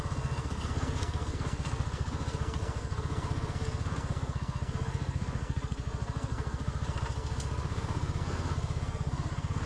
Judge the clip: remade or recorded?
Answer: remade